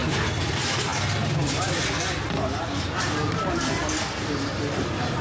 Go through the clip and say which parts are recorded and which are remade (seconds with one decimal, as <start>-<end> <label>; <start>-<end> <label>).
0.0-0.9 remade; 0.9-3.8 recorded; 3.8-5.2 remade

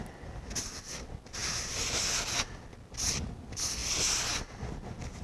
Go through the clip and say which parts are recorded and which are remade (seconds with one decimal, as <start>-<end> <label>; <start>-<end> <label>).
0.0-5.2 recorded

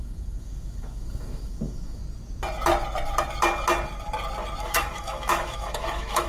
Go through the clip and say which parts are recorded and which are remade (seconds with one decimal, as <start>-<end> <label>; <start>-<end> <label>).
0.0-2.0 remade; 2.0-4.6 recorded; 4.6-6.3 remade

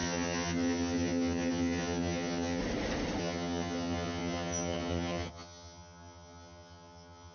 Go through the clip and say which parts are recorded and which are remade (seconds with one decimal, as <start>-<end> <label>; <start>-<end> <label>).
0.0-2.6 remade; 2.6-3.2 recorded; 3.2-7.3 remade

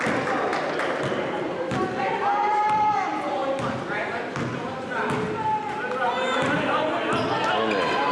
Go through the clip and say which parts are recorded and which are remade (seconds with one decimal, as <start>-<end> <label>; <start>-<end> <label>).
0.0-3.4 remade; 3.4-8.1 recorded

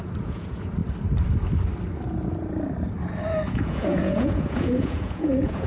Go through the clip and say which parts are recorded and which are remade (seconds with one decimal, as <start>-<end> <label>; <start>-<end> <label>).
0.0-0.8 remade; 0.8-3.5 recorded; 3.5-5.7 remade